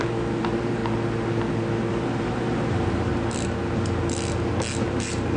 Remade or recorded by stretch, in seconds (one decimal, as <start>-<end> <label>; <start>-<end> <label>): 0.0-0.8 remade; 0.8-1.9 recorded; 1.9-3.1 remade; 3.1-4.9 recorded; 4.9-5.4 remade